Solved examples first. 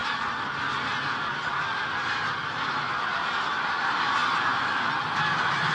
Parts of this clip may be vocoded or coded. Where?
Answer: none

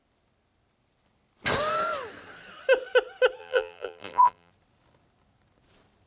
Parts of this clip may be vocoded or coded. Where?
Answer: 3.4-4.5

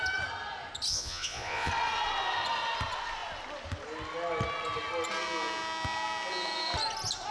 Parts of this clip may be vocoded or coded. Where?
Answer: 0.9-1.7

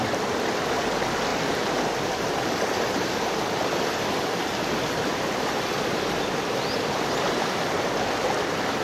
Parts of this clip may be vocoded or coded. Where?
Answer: 0.0-4.4; 5.1-8.8

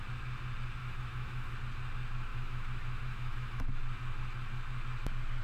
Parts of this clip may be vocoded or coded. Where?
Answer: 0.8-1.5; 2.3-3.6

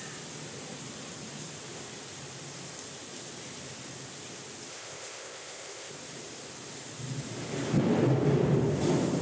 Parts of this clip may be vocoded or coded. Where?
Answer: 4.7-5.9

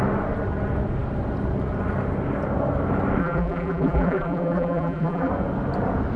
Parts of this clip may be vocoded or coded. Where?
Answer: 3.2-5.3